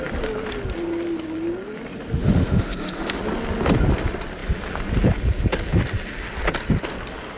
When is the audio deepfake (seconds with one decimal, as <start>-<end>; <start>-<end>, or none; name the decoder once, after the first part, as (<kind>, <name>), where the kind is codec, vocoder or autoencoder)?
2.2-3.2 (autoencoder, DAC-VAE)